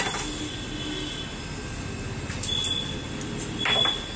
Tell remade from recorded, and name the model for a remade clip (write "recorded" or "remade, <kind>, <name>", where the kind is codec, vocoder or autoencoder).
recorded